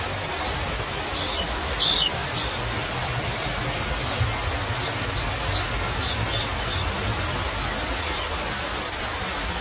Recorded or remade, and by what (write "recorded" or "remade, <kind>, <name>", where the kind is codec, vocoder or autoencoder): recorded